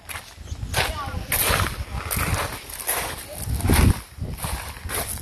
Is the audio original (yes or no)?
yes